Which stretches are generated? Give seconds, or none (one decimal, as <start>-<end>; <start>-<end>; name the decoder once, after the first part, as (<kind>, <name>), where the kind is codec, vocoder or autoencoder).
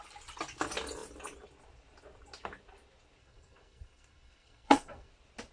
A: 3.2-5.1 (codec, SNAC)